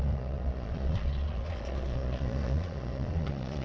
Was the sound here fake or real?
fake